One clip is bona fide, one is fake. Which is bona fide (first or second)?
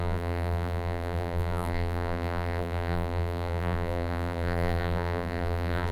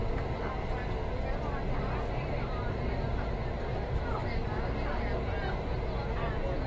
second